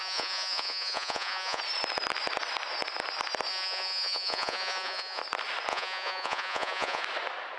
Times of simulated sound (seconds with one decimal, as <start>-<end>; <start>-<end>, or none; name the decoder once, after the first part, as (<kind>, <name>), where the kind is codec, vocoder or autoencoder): 0.0-1.6 (vocoder, Vocos); 3.5-5.2; 5.7-7.0